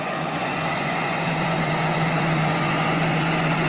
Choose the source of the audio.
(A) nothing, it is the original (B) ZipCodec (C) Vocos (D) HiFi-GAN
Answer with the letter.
C